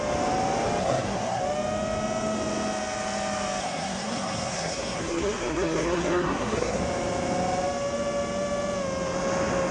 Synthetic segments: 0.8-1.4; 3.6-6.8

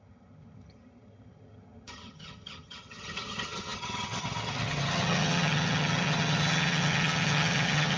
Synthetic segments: 0.0-8.0